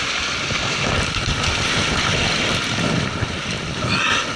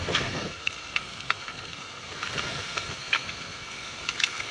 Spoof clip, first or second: second